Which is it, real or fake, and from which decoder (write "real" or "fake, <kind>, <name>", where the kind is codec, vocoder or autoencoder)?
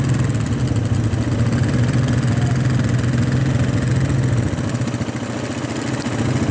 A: real